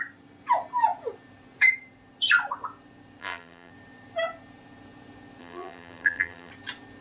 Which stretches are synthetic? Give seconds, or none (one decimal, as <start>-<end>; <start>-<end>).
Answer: 3.2-3.7; 5.4-6.5